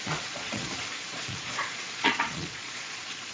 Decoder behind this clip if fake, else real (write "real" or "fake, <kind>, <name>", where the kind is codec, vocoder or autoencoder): fake, vocoder, Vocos